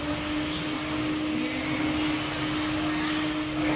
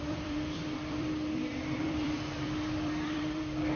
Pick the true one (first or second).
first